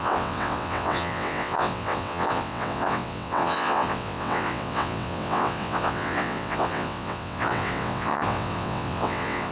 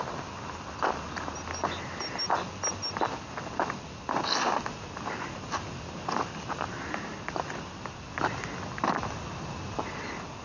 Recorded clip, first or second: second